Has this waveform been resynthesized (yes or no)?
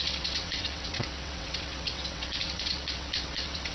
yes